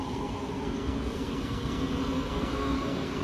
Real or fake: fake